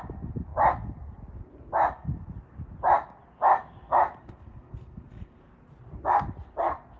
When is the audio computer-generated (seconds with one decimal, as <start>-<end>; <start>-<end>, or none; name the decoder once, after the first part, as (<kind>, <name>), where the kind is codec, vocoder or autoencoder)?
4.2-5.4 (codec, SNAC)